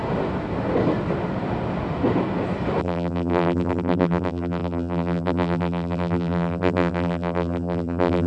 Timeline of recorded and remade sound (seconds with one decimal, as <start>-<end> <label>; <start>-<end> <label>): 0.0-2.8 recorded; 2.8-8.3 remade